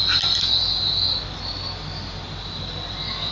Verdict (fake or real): real